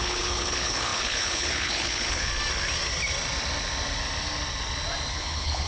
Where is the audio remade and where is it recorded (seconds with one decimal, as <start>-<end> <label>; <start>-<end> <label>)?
0.0-2.3 remade; 2.3-5.1 recorded; 5.1-5.7 remade